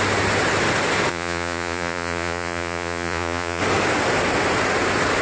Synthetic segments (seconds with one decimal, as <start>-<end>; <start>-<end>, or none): 1.1-3.6